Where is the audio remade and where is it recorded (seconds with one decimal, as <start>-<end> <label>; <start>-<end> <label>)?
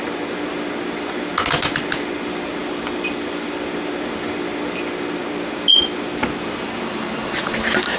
0.0-8.0 recorded